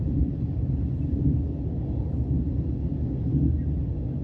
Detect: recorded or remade recorded